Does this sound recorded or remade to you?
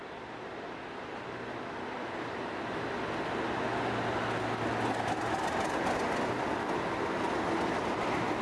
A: recorded